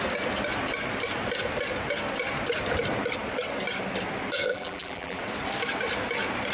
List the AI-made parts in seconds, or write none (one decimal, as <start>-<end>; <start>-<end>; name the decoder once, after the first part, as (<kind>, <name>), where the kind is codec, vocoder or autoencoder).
4.5-5.2 (vocoder, BigVGAN v2)